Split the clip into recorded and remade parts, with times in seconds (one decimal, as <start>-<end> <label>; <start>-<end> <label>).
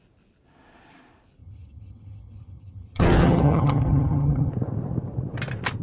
0.0-1.4 recorded; 1.4-4.5 remade; 4.5-5.8 recorded